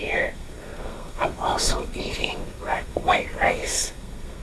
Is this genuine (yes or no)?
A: no